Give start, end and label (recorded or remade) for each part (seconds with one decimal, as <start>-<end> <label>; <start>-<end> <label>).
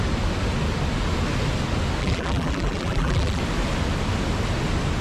0.0-2.0 recorded; 2.0-3.4 remade; 3.4-5.0 recorded